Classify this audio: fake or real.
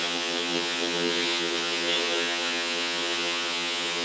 fake